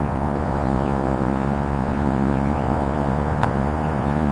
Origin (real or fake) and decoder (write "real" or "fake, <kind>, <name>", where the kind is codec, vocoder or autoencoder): fake, vocoder, Vocos